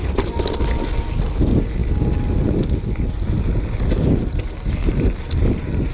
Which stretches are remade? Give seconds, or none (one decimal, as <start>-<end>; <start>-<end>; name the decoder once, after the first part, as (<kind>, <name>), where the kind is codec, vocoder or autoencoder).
none